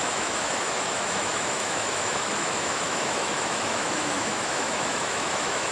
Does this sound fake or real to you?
fake